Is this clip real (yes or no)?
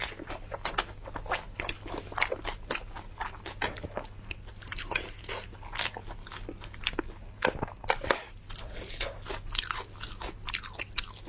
yes